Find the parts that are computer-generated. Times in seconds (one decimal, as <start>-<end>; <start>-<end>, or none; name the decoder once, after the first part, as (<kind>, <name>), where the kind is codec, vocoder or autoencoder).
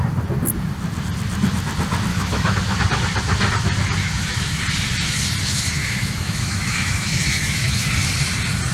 2.1-2.8 (autoencoder, DAC-VAE); 4.0-4.6; 5.8-7.9